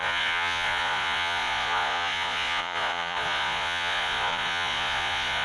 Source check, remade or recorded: remade